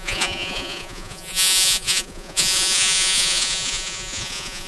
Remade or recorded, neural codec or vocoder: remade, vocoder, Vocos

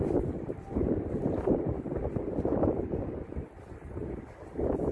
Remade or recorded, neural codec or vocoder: recorded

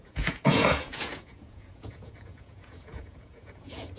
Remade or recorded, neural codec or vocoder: remade, vocoder, Vocos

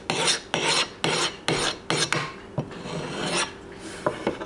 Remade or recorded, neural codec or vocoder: recorded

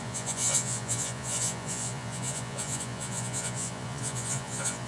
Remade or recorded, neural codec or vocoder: remade, vocoder, Vocos